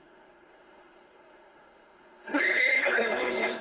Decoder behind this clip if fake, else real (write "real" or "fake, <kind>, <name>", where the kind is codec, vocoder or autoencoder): fake, codec, SNAC